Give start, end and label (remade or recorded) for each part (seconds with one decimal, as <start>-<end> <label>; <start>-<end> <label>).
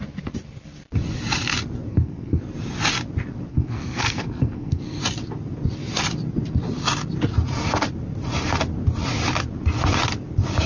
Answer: 0.0-1.9 recorded; 1.9-2.4 remade; 2.4-3.5 recorded; 3.5-5.0 remade; 5.0-10.7 recorded